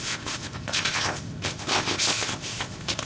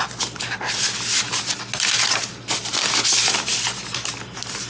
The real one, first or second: second